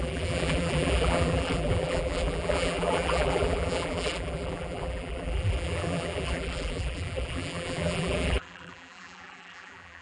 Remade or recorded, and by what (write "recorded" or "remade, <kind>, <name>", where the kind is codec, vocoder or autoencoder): remade, vocoder, BigVGAN v2